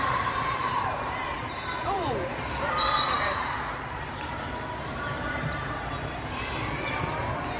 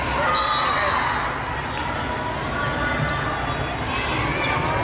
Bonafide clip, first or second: second